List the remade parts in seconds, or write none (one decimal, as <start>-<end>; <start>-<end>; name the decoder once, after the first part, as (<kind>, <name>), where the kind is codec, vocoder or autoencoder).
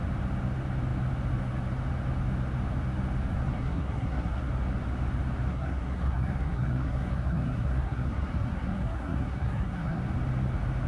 3.3-4.5 (codec, SNAC); 5.5-10.0